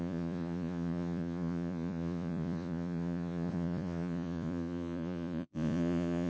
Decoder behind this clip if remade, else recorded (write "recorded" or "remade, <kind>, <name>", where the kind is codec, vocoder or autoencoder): remade, vocoder, Vocos